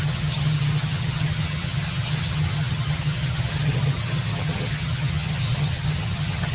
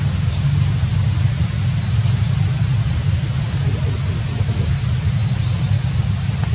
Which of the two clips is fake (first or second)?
first